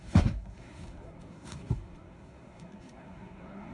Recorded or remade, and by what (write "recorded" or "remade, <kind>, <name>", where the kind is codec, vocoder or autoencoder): remade, codec, SNAC